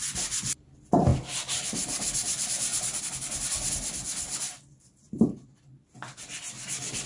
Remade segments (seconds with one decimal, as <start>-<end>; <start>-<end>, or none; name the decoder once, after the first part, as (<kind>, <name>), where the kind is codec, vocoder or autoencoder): 0.0-1.1 (vocoder, BigVGAN v2); 1.7-7.1